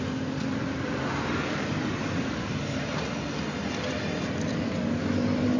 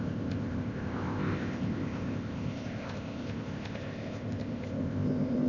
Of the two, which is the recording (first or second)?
first